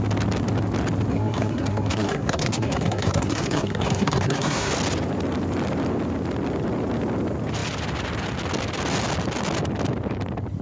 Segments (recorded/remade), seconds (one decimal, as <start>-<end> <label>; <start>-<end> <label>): 0.0-1.1 recorded; 1.1-4.7 remade; 4.7-10.6 recorded